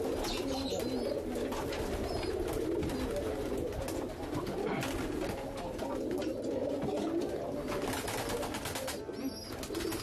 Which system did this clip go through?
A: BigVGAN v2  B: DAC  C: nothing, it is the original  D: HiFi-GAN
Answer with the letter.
C